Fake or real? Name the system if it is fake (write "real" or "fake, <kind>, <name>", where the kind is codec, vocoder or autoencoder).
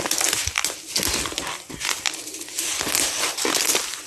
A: real